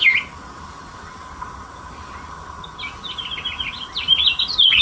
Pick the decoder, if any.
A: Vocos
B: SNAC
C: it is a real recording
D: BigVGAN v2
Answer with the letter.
C